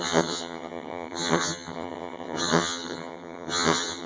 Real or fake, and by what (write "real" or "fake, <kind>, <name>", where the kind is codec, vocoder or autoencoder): fake, vocoder, HiFi-GAN